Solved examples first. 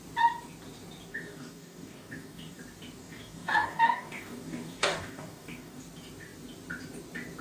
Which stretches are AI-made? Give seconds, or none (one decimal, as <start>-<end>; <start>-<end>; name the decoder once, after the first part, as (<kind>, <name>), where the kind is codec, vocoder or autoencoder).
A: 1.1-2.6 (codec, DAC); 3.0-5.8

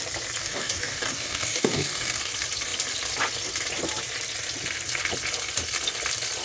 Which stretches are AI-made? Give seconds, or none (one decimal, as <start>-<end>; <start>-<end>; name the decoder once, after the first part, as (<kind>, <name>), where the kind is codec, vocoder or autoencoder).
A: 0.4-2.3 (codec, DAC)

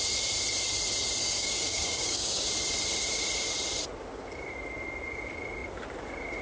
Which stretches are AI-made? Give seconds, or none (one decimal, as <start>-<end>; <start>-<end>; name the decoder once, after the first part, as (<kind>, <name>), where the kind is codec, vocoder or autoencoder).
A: 1.2-2.5 (codec, DAC)